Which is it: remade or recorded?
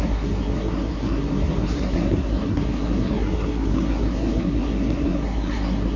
remade